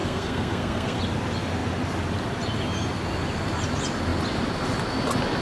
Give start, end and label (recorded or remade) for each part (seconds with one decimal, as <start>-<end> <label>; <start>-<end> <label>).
0.0-1.0 remade; 1.0-5.4 recorded